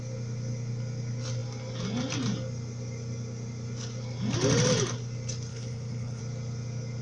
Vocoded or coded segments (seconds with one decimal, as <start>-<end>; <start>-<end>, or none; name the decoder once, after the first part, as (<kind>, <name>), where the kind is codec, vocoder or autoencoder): 5.5-6.2 (codec, HILCodec)